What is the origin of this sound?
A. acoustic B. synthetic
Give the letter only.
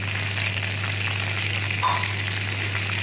A